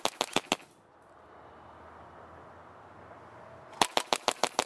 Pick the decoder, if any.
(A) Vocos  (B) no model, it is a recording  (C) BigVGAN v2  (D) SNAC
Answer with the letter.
B